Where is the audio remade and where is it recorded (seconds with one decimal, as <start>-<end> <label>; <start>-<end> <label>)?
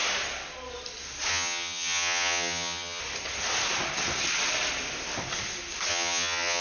0.0-1.3 recorded; 1.3-3.0 remade; 3.0-5.9 recorded; 5.9-6.6 remade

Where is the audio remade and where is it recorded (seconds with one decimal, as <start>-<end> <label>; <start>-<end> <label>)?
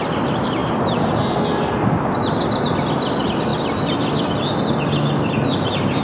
0.0-6.0 recorded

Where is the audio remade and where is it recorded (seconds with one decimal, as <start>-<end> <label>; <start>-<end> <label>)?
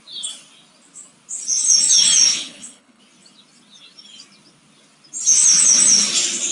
0.0-2.3 recorded; 2.3-3.0 remade; 3.0-6.5 recorded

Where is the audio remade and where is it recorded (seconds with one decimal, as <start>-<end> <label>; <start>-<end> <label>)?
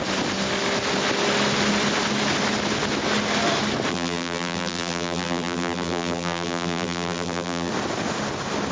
0.0-3.9 recorded; 3.9-7.7 remade; 7.7-8.7 recorded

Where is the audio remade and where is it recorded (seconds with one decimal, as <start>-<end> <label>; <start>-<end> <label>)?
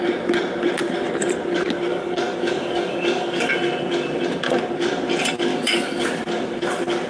0.0-1.9 recorded; 1.9-3.5 remade; 3.5-5.5 recorded; 5.5-6.0 remade; 6.0-7.1 recorded